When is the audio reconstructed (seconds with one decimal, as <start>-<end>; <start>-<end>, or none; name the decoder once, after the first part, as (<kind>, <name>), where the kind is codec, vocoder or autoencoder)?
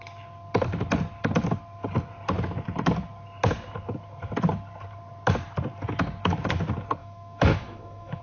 7.0-8.2 (autoencoder, DAC-VAE)